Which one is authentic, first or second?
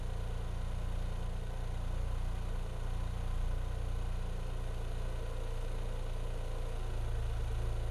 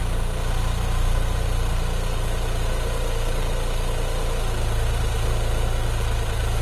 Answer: first